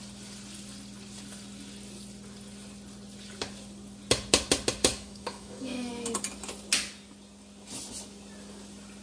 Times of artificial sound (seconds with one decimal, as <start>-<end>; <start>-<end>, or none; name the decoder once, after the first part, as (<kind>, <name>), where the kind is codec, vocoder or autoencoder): 4.8-5.9 (autoencoder, DAC-VAE)